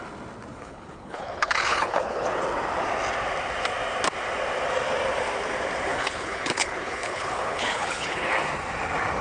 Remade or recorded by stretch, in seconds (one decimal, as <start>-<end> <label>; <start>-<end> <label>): 0.0-0.5 recorded; 0.5-2.4 remade; 2.4-5.9 recorded; 5.9-8.3 remade; 8.3-9.2 recorded